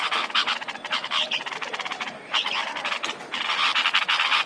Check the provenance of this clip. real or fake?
fake